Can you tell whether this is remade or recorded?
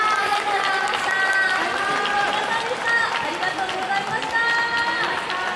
recorded